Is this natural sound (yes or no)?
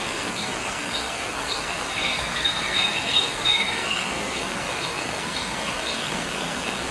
no